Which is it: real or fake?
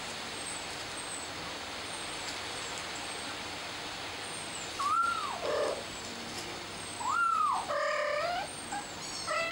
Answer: real